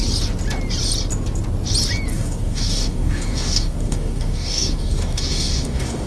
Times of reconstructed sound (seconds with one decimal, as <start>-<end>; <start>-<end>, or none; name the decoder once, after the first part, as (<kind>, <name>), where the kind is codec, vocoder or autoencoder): 2.1-6.1 (codec, DAC)